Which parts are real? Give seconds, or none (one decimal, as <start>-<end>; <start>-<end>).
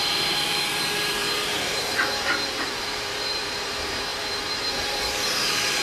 none